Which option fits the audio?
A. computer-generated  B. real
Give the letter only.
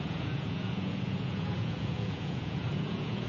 A